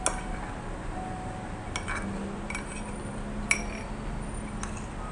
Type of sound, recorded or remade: recorded